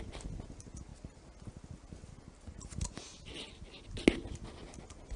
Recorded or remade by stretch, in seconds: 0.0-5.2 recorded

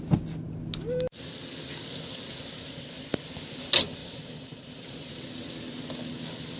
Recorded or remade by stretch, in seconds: 0.0-4.0 recorded; 4.0-5.2 remade; 5.2-6.6 recorded

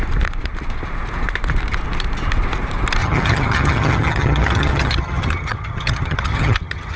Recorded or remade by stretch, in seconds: 0.0-3.0 recorded; 3.0-7.0 remade